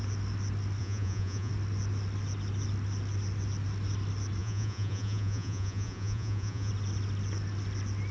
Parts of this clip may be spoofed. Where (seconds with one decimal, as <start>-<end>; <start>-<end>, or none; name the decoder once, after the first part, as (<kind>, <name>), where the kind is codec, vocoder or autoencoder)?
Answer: 0.8-1.5 (vocoder, Vocos); 4.4-6.7